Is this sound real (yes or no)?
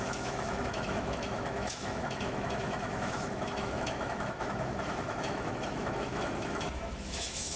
no